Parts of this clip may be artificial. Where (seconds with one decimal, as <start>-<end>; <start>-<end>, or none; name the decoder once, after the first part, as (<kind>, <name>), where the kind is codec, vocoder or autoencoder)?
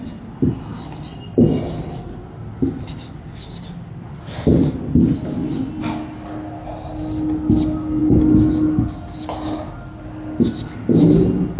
none